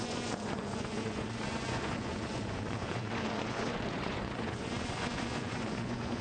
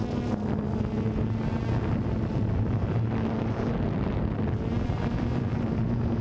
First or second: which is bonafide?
second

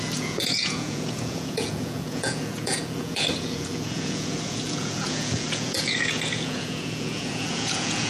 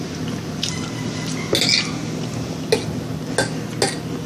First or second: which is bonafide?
second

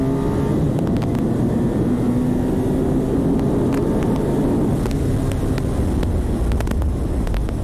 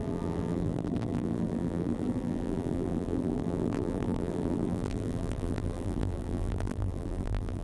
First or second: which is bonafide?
first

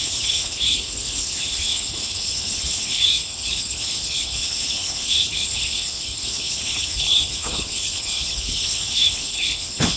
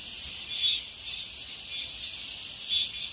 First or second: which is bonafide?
second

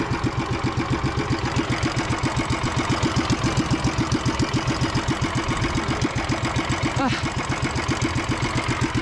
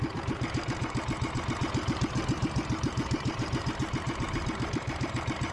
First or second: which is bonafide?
first